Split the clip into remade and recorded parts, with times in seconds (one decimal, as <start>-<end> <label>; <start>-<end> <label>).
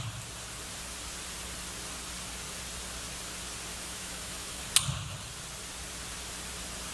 0.0-3.7 recorded; 3.7-4.6 remade; 4.6-6.9 recorded